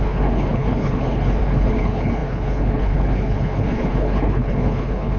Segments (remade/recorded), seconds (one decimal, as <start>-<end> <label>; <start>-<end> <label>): 0.0-5.2 remade